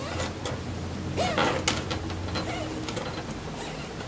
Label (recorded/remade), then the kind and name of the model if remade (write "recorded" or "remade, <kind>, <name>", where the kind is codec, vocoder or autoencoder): recorded